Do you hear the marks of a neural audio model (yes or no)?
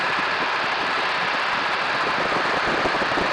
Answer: no